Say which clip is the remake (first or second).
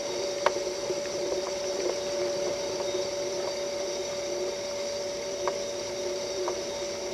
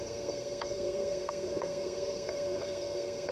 second